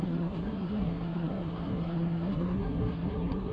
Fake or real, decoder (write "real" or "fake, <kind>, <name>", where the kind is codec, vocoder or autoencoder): fake, codec, SNAC